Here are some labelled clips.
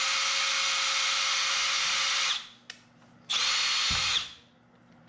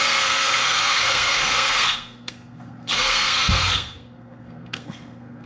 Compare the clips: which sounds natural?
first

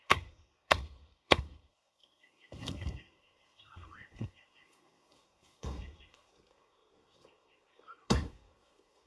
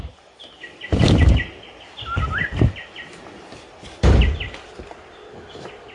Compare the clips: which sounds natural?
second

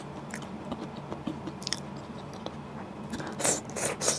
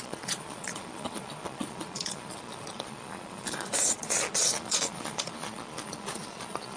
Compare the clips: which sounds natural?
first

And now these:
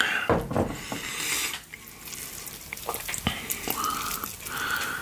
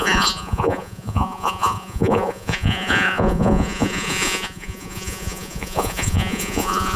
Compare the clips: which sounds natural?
first